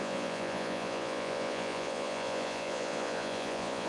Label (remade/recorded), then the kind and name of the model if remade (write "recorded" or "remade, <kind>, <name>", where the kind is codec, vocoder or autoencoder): remade, vocoder, Vocos